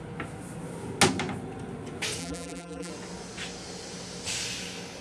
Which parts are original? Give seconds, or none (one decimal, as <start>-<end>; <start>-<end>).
0.0-2.2; 2.9-5.0